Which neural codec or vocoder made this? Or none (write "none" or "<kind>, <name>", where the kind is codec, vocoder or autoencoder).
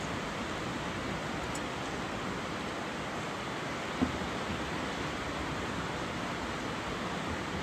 none